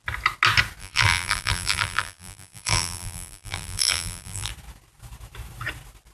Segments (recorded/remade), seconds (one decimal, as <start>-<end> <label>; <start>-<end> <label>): 0.0-0.8 recorded; 0.8-4.5 remade; 4.5-6.1 recorded